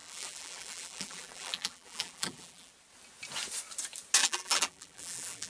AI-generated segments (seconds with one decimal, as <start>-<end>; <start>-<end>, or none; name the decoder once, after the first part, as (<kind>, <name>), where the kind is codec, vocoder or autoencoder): 0.0-2.7 (vocoder, BigVGAN v2); 4.2-5.5

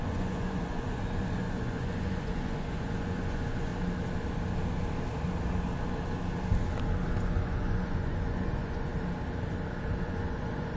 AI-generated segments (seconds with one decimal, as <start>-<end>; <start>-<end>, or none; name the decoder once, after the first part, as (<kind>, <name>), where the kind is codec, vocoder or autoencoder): 0.0-3.7 (vocoder, Vocos); 7.3-8.9; 10.0-10.8

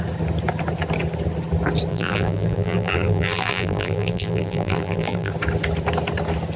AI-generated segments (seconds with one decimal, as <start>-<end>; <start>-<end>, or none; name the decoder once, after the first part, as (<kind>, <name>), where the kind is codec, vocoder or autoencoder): 1.9-5.3 (vocoder, BigVGAN v2)

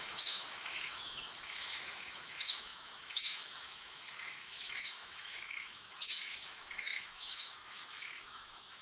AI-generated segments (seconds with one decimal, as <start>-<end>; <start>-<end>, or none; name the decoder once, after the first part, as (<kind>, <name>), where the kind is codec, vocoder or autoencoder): 0.0-8.8 (autoencoder, DAC-VAE)

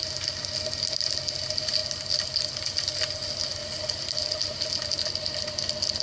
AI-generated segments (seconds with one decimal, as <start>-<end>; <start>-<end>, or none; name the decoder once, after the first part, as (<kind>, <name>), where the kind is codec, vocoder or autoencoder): none

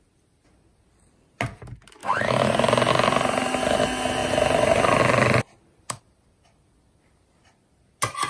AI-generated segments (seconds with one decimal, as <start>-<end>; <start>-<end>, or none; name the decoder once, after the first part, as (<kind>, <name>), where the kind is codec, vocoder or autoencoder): 2.0-2.5 (autoencoder, DAC-VAE)

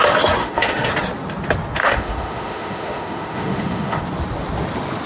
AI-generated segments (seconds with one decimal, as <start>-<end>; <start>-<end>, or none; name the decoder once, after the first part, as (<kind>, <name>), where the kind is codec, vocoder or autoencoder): 0.4-0.9 (autoencoder, DAC-VAE); 1.8-4.0

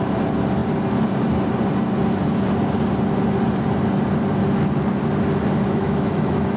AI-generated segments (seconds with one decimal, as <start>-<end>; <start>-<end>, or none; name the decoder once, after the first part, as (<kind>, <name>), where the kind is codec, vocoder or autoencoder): 5.6-6.6 (autoencoder, DAC-VAE)